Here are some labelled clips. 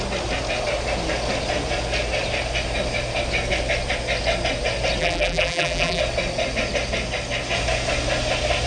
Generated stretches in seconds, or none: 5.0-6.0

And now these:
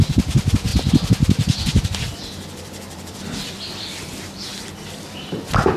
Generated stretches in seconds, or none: 0.7-3.6; 4.5-5.8

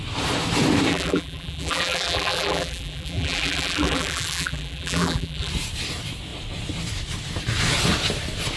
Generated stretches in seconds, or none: 0.9-5.5

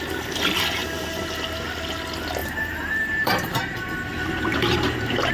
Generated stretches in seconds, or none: 2.4-5.3

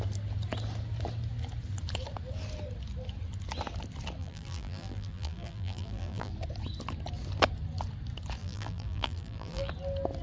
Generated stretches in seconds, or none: 4.2-6.3; 8.4-9.7

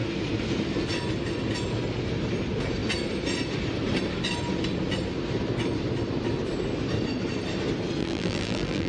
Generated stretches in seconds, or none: 8.0-8.9

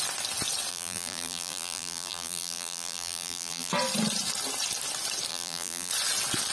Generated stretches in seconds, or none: 0.7-3.7; 5.3-5.9

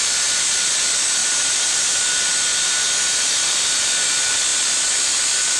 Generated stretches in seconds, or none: 1.2-2.0